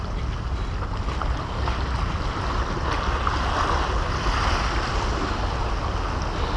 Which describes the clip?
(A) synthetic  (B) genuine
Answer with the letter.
B